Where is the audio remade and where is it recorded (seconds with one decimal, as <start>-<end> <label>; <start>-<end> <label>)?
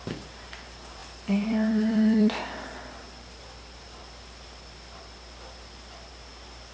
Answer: 0.0-6.7 remade